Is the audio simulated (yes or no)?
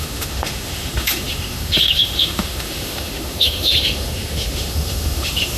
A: yes